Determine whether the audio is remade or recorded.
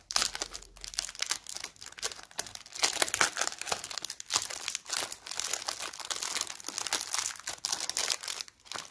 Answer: recorded